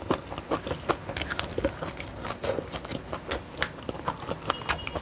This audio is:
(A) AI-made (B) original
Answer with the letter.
B